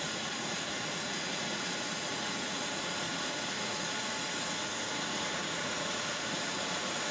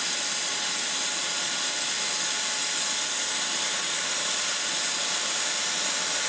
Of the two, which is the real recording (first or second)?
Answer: second